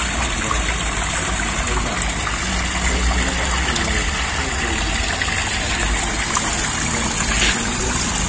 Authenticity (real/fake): real